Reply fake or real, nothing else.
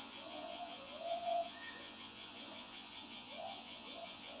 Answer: fake